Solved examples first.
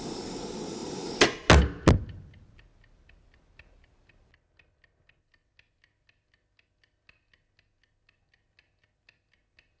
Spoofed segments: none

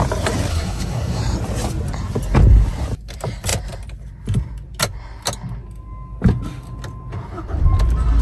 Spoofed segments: 0.5-1.2 (codec, SNAC)

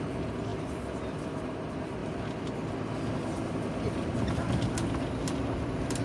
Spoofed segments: 0.0-2.0 (vocoder, BigVGAN v2); 5.4-6.0

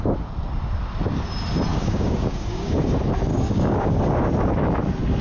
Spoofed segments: 1.7-2.9 (codec, DAC); 3.3-4.0

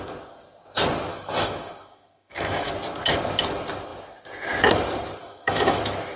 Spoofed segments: 1.1-2.7 (autoencoder, DAC-VAE); 5.2-5.8

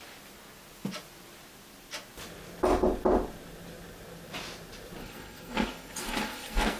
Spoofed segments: 5.0-6.8 (codec, SNAC)

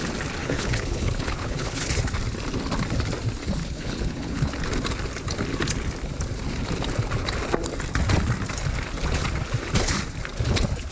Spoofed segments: 0.4-1.8 (codec, HILCodec); 3.6-4.5

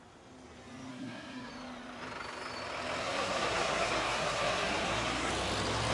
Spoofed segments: 0.9-1.5 (codec, SNAC); 3.0-5.3